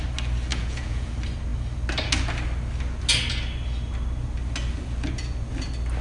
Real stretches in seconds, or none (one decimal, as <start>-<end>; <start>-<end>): 0.0-0.5; 1.1-6.0